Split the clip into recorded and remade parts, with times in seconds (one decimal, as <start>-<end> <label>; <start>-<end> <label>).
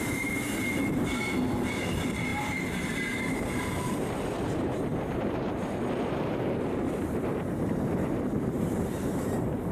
0.0-9.7 remade